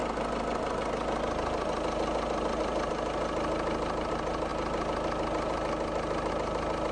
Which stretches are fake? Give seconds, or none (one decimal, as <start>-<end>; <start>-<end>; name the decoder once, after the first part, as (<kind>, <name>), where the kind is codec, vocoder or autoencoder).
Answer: none